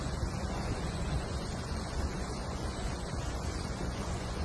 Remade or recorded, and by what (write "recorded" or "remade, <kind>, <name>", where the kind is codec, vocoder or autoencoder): remade, vocoder, Vocos